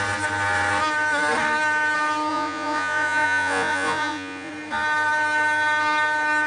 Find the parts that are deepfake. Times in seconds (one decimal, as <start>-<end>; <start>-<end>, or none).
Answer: 2.3-4.5